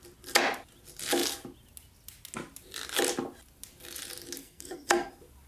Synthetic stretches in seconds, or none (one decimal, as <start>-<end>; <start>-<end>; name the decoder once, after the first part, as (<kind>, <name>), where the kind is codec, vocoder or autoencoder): 4.4-5.1 (codec, SNAC)